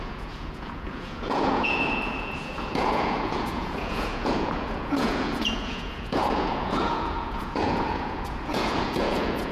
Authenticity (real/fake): fake